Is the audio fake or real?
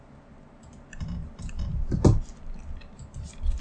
real